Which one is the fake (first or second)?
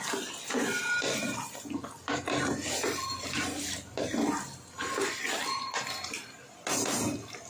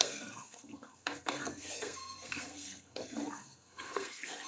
second